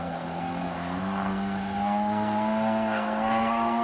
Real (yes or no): no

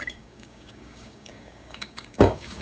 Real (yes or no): no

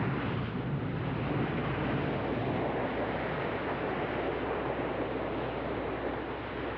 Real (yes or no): yes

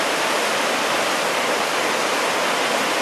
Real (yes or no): yes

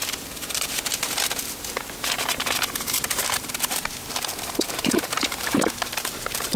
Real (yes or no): no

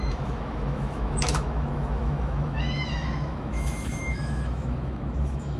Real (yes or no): no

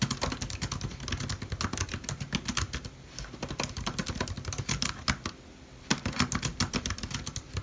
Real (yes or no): yes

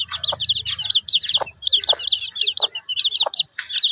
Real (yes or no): yes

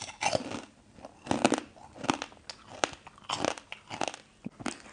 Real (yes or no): yes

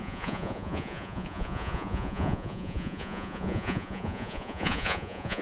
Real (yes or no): no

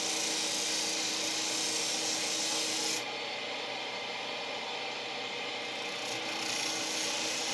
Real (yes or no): yes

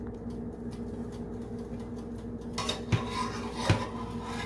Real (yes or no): yes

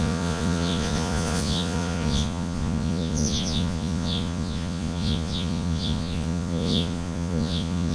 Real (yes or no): no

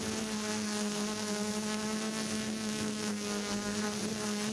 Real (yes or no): no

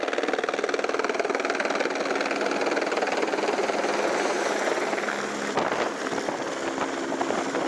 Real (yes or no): yes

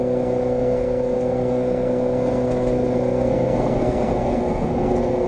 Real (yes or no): no